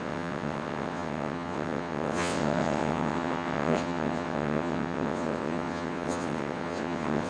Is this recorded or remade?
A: remade